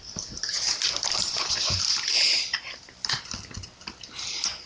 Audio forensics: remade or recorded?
recorded